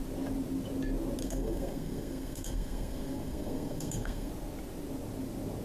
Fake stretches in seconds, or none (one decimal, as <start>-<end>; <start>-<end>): 1.2-4.3